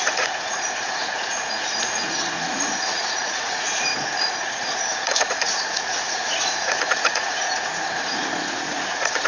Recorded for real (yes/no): no